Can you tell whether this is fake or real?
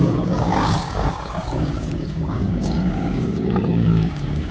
fake